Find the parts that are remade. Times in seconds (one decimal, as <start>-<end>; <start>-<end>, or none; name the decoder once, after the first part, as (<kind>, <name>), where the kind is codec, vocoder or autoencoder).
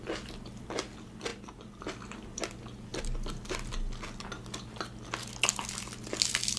none